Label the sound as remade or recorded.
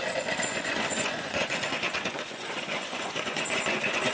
remade